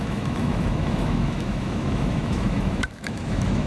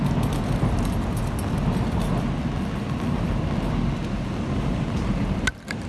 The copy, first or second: first